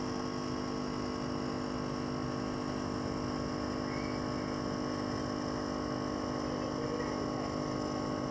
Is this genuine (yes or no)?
yes